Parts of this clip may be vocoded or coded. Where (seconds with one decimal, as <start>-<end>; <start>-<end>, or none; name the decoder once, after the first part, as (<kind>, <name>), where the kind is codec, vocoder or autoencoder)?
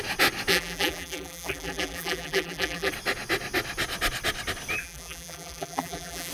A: 0.5-2.9 (vocoder, BigVGAN v2); 4.8-6.3